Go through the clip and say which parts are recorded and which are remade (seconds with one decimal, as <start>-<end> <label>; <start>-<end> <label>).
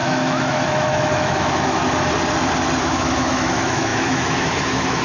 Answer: 0.0-1.8 remade; 1.8-2.8 recorded; 2.8-5.0 remade